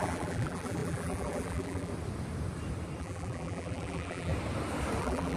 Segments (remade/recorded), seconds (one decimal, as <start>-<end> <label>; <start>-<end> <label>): 0.0-1.9 remade; 1.9-3.0 recorded; 3.0-4.3 remade; 4.3-5.0 recorded; 5.0-5.4 remade

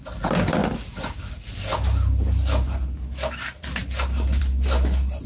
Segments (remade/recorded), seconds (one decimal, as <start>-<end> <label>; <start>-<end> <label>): 0.0-5.3 recorded